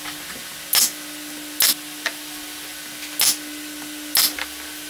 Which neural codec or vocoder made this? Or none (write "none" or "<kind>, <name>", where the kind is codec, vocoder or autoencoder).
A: none